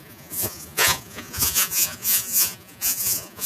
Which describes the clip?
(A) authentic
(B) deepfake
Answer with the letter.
B